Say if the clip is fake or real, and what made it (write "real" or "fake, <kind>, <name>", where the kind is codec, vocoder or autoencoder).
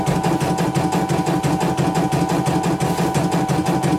real